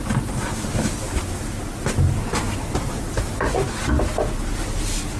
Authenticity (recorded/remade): recorded